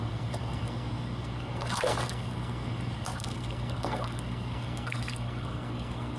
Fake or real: fake